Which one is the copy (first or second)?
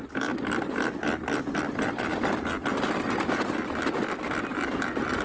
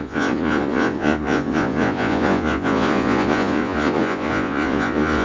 second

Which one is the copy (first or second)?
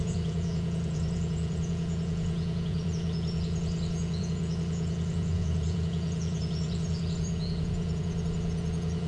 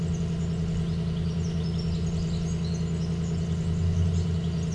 first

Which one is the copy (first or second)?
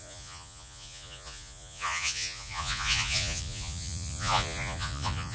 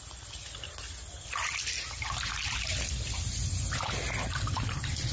first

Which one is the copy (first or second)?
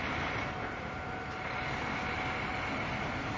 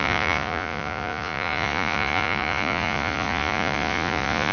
second